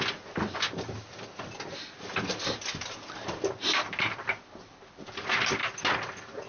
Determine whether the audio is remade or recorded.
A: recorded